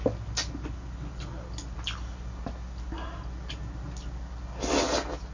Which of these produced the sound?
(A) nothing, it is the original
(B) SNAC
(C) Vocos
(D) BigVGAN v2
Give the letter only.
A